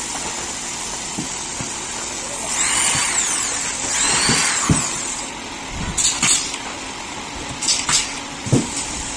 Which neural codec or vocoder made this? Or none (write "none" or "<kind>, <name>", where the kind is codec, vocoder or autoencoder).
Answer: none